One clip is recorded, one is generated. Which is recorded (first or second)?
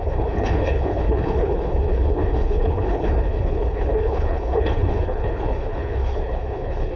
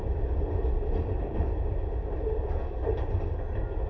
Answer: second